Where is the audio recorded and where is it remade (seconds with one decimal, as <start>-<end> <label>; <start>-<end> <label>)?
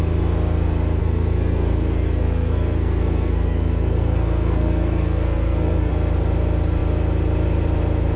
0.0-1.0 recorded; 1.0-5.9 remade; 5.9-8.2 recorded